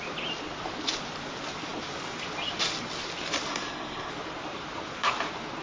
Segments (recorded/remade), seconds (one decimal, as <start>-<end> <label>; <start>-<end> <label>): 0.0-3.5 recorded; 3.5-4.1 remade; 4.1-5.6 recorded